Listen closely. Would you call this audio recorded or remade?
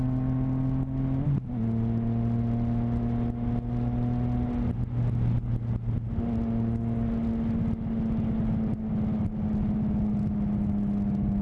recorded